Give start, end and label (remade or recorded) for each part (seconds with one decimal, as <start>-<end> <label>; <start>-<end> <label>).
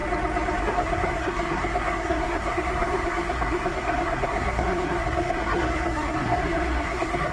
0.0-0.6 recorded; 0.6-7.3 remade